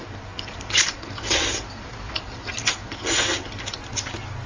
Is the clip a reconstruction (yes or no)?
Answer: no